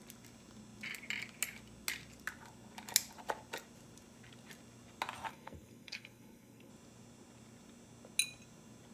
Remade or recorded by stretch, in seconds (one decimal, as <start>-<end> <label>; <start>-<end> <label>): 0.0-5.3 recorded; 5.3-6.7 remade; 6.7-8.9 recorded